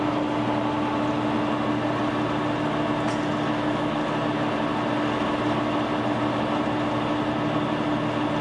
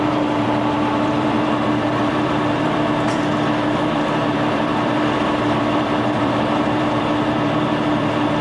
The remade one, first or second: second